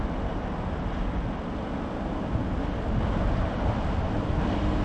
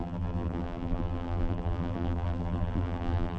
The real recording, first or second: first